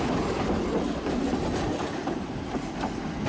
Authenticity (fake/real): real